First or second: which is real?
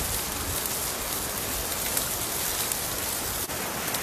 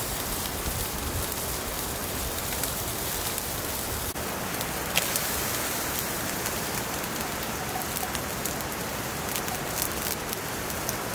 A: first